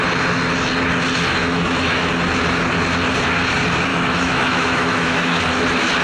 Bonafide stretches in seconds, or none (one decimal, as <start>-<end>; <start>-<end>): 0.0-1.4; 2.1-3.9; 5.4-6.0